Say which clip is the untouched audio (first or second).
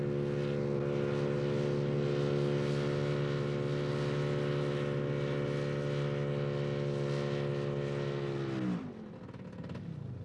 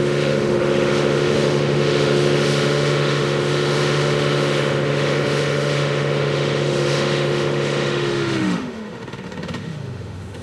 first